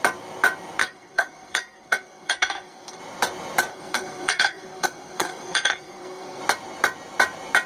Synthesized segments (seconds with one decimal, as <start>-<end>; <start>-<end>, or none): 0.8-3.0; 3.7-6.4